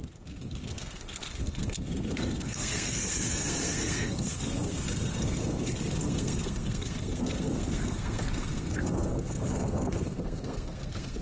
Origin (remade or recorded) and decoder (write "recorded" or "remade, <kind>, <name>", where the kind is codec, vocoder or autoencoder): remade, codec, SNAC